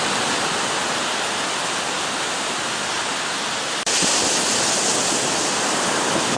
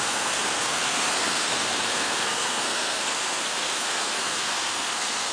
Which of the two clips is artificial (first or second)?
second